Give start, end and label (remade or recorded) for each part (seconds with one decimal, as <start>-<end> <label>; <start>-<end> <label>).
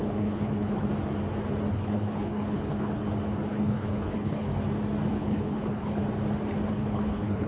0.0-0.9 remade; 0.9-1.7 recorded; 1.7-3.0 remade; 3.0-3.5 recorded; 3.5-4.5 remade; 4.5-5.1 recorded; 5.1-6.0 remade; 6.0-6.7 recorded; 6.7-7.5 remade